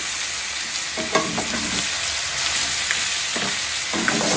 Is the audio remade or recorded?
recorded